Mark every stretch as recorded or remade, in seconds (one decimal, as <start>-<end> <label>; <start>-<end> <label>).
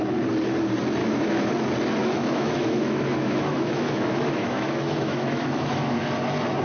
0.0-1.0 recorded; 1.0-1.5 remade; 1.5-2.0 recorded; 2.0-6.0 remade; 6.0-6.6 recorded